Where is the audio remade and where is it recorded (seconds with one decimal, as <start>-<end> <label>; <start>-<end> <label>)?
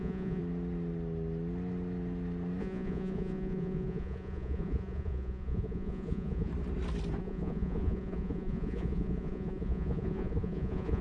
0.0-0.4 remade; 0.4-2.6 recorded; 2.6-6.5 remade; 6.5-7.2 recorded; 7.2-11.0 remade